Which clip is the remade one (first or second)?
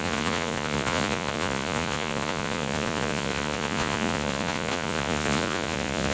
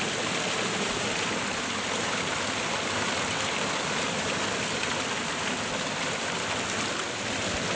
first